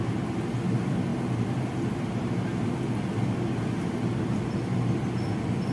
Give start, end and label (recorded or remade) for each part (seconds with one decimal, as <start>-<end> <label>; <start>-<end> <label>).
0.0-5.7 recorded

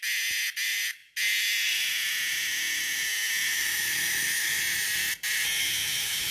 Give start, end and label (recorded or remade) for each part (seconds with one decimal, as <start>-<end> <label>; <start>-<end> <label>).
0.0-3.5 recorded; 3.5-4.6 remade; 4.6-5.6 recorded; 5.6-6.3 remade

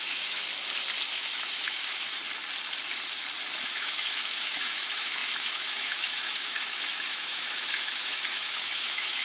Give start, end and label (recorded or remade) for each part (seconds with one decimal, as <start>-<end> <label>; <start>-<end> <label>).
0.0-0.4 remade; 0.4-1.1 recorded; 1.1-2.2 remade; 2.2-3.7 recorded; 3.7-9.2 remade

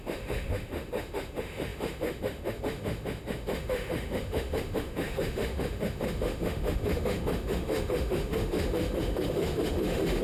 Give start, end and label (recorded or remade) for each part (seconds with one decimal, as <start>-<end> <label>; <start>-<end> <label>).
0.0-10.2 remade

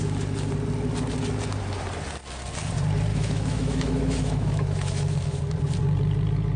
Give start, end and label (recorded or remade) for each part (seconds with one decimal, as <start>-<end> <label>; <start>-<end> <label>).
0.0-3.1 recorded; 3.1-5.4 remade; 5.4-6.6 recorded